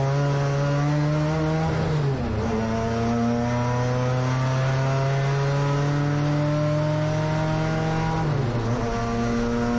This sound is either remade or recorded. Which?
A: recorded